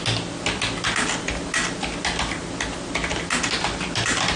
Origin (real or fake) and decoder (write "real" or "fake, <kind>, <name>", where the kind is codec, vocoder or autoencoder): real